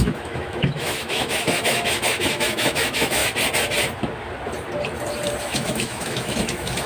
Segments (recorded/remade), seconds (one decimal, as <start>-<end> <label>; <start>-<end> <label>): 0.0-3.2 remade; 3.2-5.4 recorded; 5.4-6.9 remade